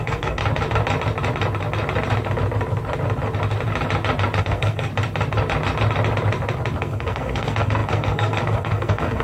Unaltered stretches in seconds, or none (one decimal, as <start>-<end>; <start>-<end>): 0.4-4.4; 4.9-6.8